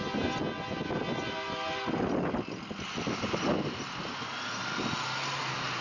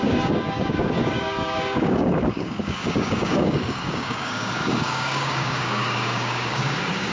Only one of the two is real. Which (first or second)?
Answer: first